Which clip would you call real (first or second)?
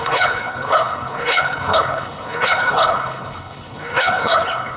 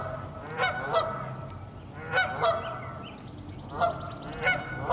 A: second